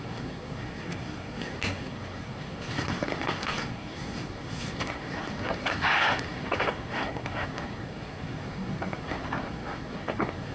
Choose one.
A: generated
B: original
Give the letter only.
A